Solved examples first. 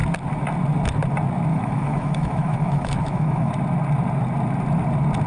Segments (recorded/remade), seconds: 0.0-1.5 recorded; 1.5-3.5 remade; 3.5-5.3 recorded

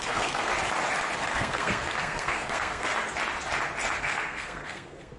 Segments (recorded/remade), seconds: 0.0-0.5 remade; 0.5-1.2 recorded; 1.2-2.9 remade; 2.9-4.0 recorded; 4.0-5.2 remade

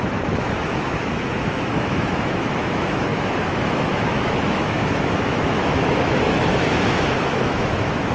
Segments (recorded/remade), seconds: 0.0-8.1 remade

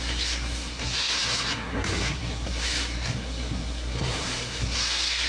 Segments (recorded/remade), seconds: 0.0-5.3 remade

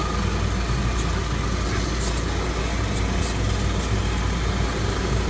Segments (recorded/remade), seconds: 0.0-5.3 recorded